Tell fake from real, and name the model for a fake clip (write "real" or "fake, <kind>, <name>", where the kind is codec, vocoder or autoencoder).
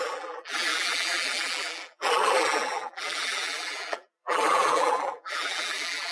fake, vocoder, BigVGAN v2